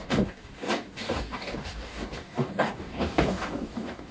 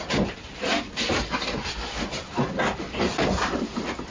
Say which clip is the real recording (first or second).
second